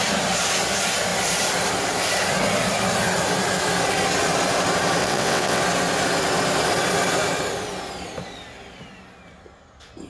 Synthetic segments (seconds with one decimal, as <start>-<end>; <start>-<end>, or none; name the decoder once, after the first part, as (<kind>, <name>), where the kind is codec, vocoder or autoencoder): 5.0-5.6 (vocoder, WaveNeXt)